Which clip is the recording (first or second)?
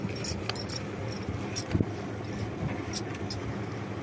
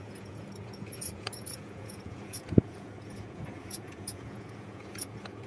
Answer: first